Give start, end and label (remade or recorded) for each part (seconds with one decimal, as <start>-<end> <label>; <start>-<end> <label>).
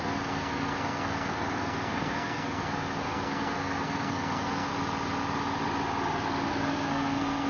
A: 0.0-4.7 remade; 4.7-6.5 recorded; 6.5-7.5 remade